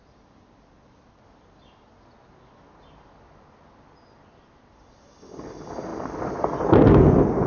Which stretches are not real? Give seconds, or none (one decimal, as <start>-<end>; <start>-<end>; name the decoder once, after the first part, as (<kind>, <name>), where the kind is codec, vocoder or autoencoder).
5.9-6.6 (vocoder, BigVGAN v2)